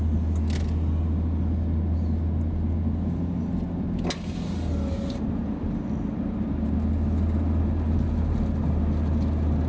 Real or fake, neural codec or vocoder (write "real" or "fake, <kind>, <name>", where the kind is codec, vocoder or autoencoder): real